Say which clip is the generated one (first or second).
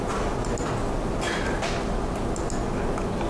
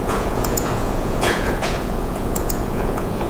second